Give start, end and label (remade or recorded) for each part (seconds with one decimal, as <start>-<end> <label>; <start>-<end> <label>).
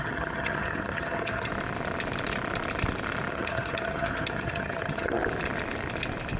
0.0-1.5 remade; 1.5-3.3 recorded; 3.3-5.2 remade; 5.2-6.4 recorded